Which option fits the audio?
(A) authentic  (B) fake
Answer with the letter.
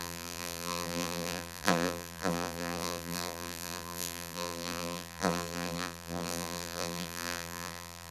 B